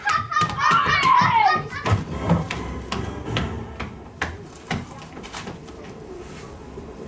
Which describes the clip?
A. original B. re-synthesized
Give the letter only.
A